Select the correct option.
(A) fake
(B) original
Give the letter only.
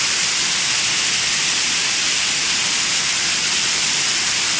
B